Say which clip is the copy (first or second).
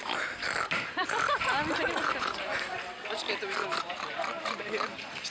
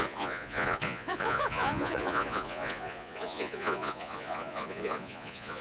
second